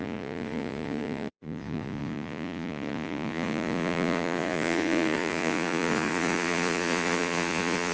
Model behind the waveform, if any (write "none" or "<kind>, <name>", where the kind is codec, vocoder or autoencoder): vocoder, Vocos